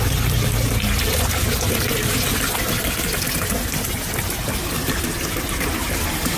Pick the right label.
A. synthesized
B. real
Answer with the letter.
B